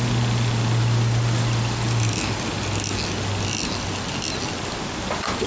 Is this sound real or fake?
real